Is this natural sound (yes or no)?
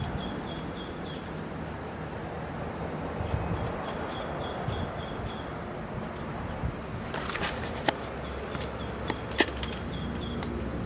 yes